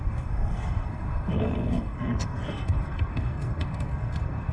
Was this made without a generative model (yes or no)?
no